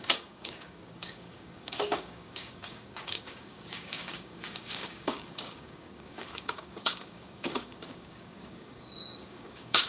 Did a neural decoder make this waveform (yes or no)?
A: yes